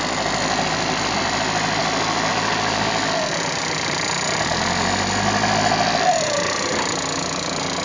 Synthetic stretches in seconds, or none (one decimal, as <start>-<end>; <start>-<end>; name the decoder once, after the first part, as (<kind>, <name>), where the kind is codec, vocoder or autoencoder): none